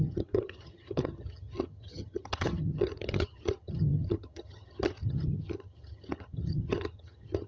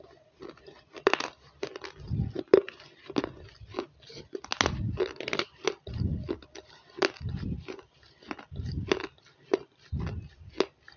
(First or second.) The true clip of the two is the second